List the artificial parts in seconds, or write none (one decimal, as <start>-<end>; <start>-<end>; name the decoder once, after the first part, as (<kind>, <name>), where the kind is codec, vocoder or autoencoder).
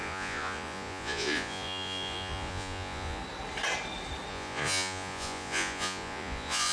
0.0-3.2 (vocoder, Vocos); 4.3-6.7